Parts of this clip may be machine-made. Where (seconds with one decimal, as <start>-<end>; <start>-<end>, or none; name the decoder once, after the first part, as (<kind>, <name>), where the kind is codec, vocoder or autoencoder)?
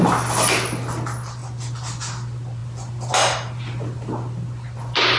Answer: none